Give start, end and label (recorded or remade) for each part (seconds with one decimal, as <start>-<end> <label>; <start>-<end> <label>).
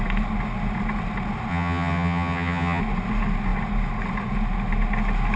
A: 0.0-1.5 recorded; 1.5-2.8 remade; 2.8-5.4 recorded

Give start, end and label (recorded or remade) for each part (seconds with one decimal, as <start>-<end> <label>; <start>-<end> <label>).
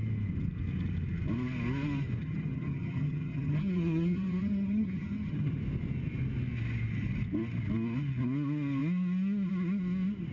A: 0.0-2.2 recorded; 2.2-5.6 remade; 5.6-10.3 recorded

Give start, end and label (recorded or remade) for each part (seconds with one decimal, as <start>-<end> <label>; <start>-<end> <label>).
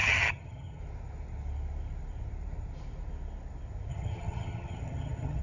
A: 0.0-0.8 remade; 0.8-3.9 recorded; 3.9-5.4 remade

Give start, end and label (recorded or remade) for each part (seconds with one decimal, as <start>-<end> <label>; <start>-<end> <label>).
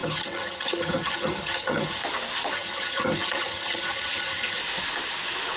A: 0.0-2.0 remade; 2.0-2.5 recorded; 2.5-4.6 remade; 4.6-5.6 recorded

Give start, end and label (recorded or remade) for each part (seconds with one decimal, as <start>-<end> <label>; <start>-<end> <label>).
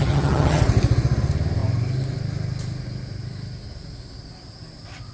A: 0.0-0.6 remade; 0.6-5.1 recorded